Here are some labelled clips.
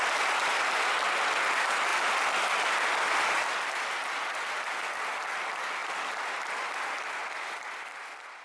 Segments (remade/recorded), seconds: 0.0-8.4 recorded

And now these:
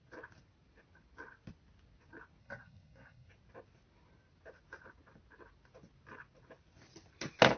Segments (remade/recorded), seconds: 0.0-2.4 recorded; 2.4-3.3 remade; 3.3-7.6 recorded

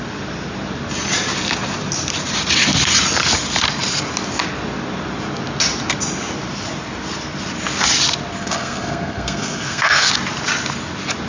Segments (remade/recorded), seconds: 0.0-8.4 recorded; 8.4-10.1 remade; 10.1-11.3 recorded

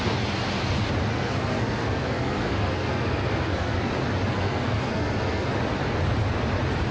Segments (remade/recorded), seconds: 0.0-1.1 recorded; 1.1-3.9 remade; 3.9-4.3 recorded; 4.3-5.5 remade; 5.5-6.9 recorded

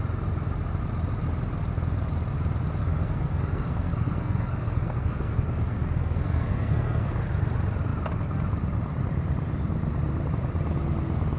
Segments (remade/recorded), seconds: 0.0-2.8 recorded; 2.8-7.2 remade; 7.2-11.4 recorded

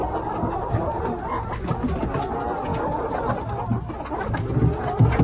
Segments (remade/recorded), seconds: 0.0-5.2 recorded